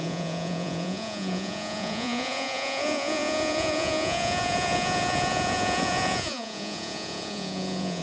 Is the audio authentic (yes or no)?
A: no